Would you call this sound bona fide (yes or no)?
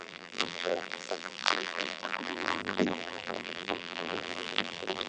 no